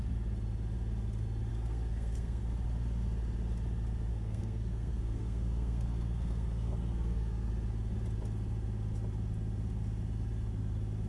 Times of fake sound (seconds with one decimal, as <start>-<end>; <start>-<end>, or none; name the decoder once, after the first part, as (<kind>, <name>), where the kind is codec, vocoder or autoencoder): 1.5-2.4 (codec, SNAC); 4.1-7.5